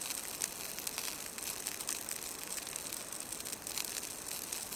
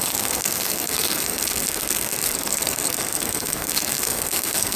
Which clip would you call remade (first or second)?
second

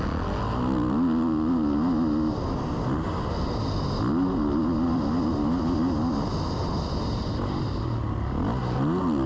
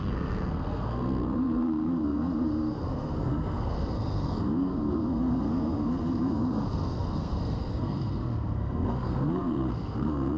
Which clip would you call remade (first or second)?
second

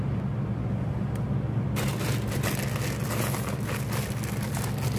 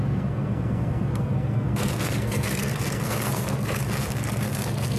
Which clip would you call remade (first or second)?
second